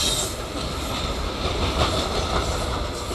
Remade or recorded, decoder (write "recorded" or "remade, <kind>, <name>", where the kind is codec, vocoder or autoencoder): recorded